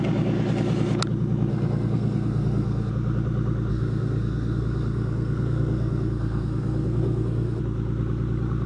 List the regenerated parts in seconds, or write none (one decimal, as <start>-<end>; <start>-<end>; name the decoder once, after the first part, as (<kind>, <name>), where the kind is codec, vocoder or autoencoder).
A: 1.5-2.9 (codec, SNAC); 3.7-7.6